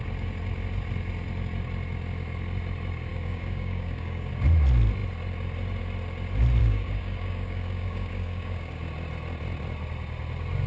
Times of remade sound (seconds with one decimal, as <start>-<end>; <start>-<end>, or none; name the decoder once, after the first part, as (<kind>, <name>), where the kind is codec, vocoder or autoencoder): 3.1-4.3 (codec, DAC); 6.6-8.8